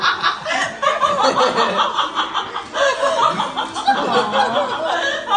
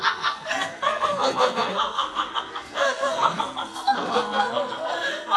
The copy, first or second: second